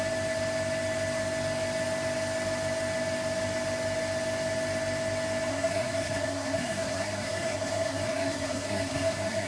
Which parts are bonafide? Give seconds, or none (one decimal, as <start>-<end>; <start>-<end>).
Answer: 0.0-5.5